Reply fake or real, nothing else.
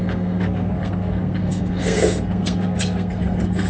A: fake